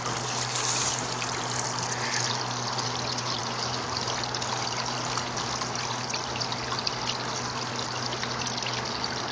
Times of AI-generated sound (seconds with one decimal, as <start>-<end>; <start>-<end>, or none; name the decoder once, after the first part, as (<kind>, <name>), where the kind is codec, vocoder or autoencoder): none